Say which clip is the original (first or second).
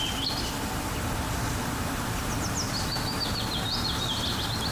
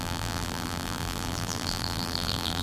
first